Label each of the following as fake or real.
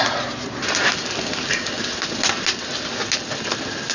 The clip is real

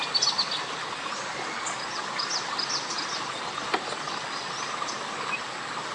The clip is real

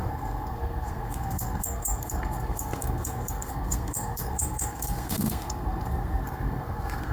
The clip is fake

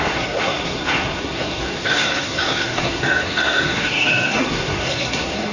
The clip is fake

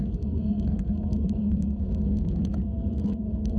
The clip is fake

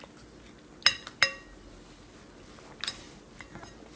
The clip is real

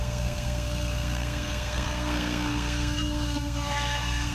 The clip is fake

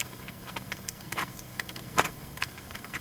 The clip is fake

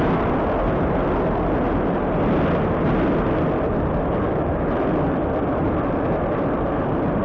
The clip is real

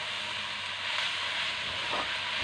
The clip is real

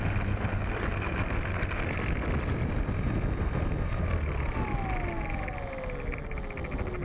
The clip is real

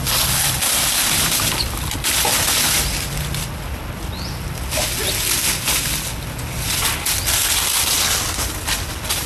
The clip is real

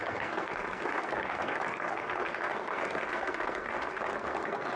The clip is fake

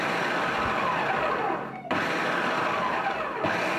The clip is real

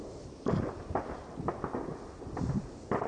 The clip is real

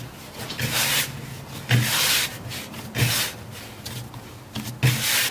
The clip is real